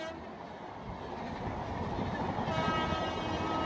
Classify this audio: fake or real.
real